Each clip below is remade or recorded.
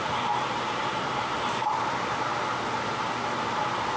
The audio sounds remade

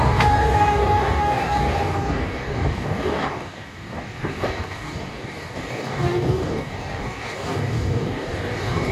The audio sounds remade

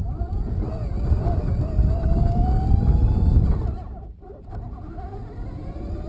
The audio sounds recorded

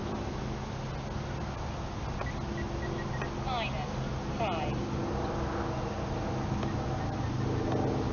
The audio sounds recorded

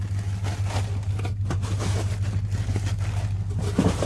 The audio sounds recorded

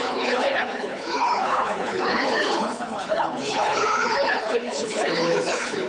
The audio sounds remade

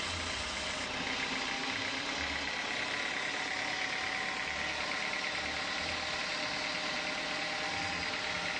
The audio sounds recorded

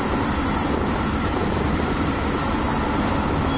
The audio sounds recorded